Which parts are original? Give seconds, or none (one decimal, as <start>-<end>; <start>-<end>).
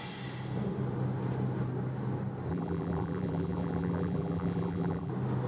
0.0-2.5; 5.1-5.5